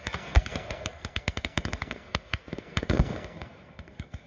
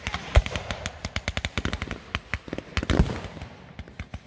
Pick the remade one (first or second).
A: first